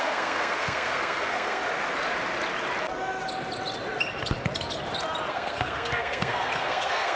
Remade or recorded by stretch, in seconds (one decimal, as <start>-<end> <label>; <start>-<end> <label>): 0.0-1.6 remade; 1.6-5.3 recorded; 5.3-7.2 remade